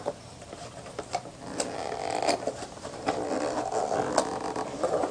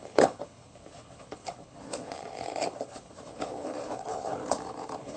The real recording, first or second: first